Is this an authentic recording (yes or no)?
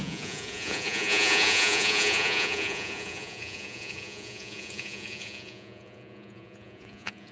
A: no